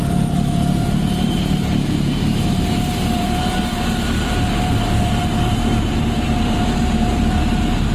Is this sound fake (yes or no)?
yes